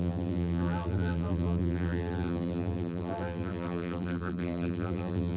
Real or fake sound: fake